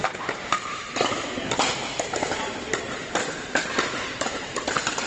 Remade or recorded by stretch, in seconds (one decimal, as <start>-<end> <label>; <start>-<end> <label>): 0.0-0.8 remade; 0.8-3.9 recorded; 3.9-5.1 remade